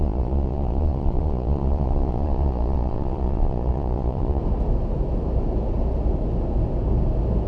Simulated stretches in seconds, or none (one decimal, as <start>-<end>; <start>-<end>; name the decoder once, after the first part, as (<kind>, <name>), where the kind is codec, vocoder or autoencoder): 0.0-4.4 (vocoder, Vocos)